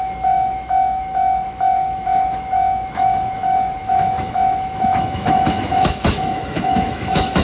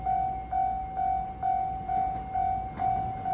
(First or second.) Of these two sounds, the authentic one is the second